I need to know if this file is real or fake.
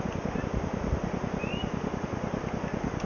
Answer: real